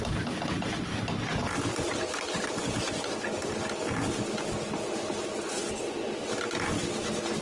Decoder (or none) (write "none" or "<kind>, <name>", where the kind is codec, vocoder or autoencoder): none